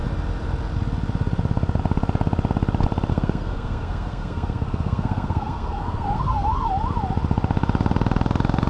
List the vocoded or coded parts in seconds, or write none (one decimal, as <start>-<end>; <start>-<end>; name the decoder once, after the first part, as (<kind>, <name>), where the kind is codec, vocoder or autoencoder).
3.1-6.7 (codec, SNAC)